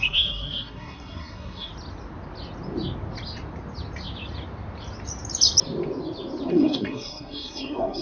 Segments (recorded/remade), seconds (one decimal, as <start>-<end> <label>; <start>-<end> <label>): 0.0-1.7 remade; 1.7-6.5 recorded; 6.5-8.0 remade